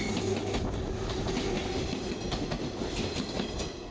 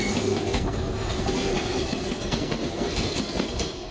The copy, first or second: second